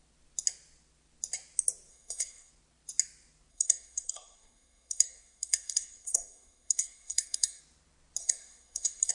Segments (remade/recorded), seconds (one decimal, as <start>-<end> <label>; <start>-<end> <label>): 0.0-1.9 recorded; 1.9-2.5 remade; 2.5-3.5 recorded; 3.5-7.6 remade; 7.6-8.2 recorded; 8.2-9.1 remade